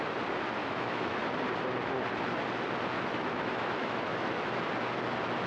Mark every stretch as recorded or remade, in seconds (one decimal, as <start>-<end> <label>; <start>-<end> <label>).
0.0-0.6 recorded; 0.6-1.2 remade; 1.2-3.1 recorded; 3.1-4.7 remade; 4.7-5.5 recorded